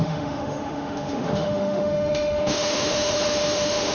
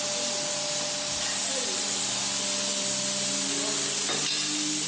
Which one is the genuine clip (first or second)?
second